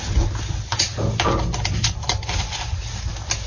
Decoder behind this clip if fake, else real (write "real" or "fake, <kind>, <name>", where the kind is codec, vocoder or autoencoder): real